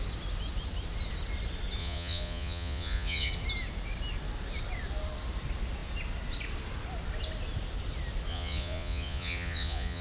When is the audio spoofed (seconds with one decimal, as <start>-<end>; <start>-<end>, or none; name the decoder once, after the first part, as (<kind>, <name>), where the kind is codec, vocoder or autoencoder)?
1.8-3.3 (vocoder, Vocos); 8.3-10.0